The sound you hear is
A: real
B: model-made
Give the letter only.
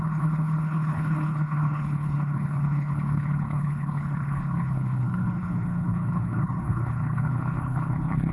B